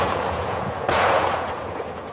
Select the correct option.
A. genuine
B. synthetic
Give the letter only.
B